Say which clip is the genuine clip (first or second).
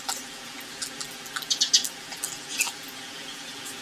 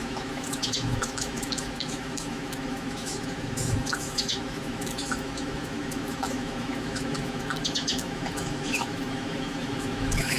first